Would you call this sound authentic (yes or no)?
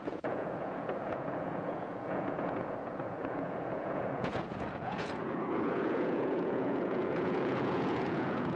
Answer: no